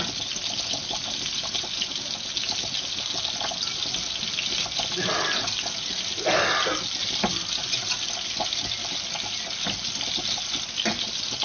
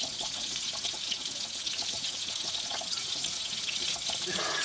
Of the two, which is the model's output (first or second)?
second